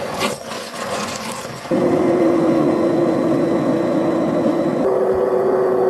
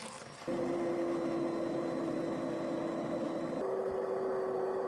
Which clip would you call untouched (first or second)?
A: second